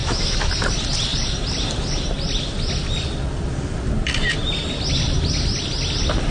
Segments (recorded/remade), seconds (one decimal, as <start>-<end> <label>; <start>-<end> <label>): 0.0-0.5 remade; 0.5-6.3 recorded